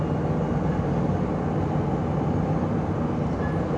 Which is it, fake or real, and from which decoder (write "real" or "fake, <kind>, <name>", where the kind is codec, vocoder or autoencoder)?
real